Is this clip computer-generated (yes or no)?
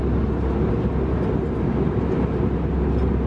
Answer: no